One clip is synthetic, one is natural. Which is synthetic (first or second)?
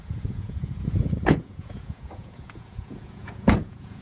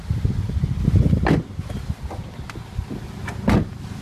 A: first